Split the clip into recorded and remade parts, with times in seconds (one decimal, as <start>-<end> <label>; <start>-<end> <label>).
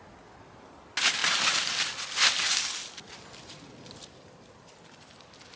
0.0-5.6 recorded